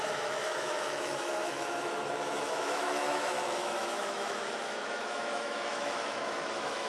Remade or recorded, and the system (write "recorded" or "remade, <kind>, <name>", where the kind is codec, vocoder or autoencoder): remade, autoencoder, DAC-VAE